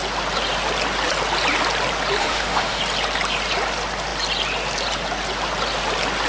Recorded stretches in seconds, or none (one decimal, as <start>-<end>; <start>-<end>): 0.0-2.2; 2.8-6.3